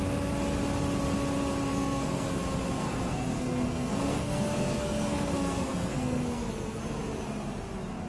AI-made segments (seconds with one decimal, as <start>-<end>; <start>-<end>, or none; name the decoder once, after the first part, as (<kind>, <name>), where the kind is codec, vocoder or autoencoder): 1.7-2.4 (codec, SNAC); 2.8-6.8